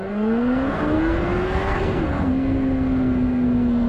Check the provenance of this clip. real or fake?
fake